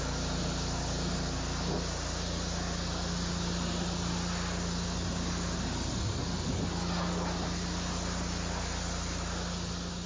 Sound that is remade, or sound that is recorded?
recorded